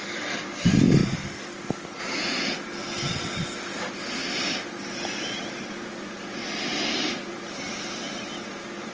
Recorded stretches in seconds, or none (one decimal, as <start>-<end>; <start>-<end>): 0.0-4.2; 7.6-8.9